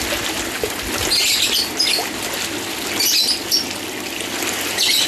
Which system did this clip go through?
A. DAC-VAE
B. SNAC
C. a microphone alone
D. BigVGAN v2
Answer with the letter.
C